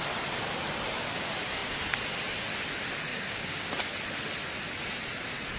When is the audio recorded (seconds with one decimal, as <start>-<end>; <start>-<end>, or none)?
0.0-3.1; 3.7-5.6